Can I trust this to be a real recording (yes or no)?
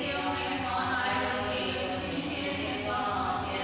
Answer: yes